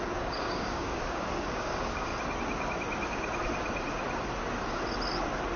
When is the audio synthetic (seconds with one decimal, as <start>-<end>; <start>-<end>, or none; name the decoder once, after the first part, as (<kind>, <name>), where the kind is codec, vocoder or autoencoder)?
0.0-2.1 (codec, DAC)